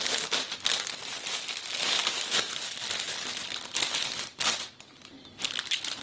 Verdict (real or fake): real